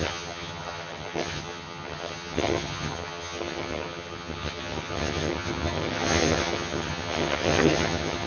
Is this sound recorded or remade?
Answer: remade